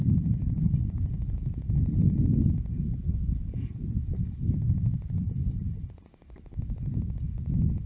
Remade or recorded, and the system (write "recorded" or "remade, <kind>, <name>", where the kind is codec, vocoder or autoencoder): recorded